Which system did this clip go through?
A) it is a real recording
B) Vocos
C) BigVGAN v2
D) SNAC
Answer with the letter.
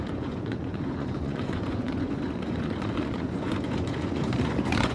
B